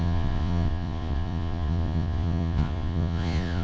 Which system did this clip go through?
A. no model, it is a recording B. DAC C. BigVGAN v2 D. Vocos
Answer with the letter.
D